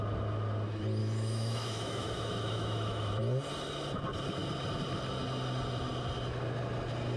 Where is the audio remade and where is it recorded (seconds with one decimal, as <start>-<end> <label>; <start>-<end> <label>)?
0.0-1.0 recorded; 1.0-3.1 remade; 3.1-7.2 recorded

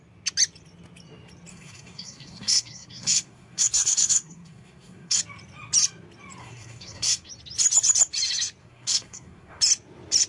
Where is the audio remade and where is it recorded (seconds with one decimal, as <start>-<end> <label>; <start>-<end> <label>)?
0.0-1.5 recorded; 1.5-5.2 remade; 5.2-6.4 recorded; 6.4-7.3 remade; 7.3-8.6 recorded; 8.6-9.6 remade; 9.6-10.3 recorded

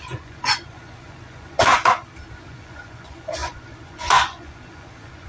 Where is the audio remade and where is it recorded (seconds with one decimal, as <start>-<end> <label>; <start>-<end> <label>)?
0.0-1.7 remade; 1.7-2.3 recorded; 2.3-5.3 remade

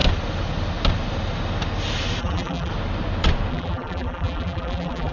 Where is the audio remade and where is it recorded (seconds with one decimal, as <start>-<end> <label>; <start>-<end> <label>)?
0.0-2.2 recorded; 2.2-2.7 remade; 2.7-3.5 recorded; 3.5-5.1 remade

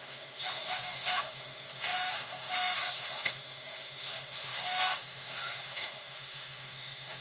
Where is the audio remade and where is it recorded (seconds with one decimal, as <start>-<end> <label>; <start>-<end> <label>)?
0.0-7.2 remade